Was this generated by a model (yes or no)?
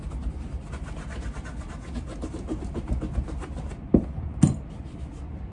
no